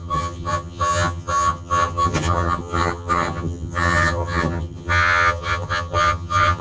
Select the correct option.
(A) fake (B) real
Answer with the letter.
A